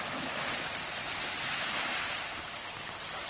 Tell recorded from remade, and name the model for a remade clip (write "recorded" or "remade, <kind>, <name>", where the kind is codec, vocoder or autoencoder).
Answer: recorded